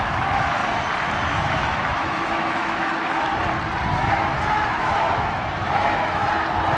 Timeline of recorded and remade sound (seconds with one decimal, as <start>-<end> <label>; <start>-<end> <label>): 0.0-0.6 remade; 0.6-1.3 recorded; 1.3-3.3 remade; 3.3-3.9 recorded; 3.9-6.2 remade; 6.2-6.8 recorded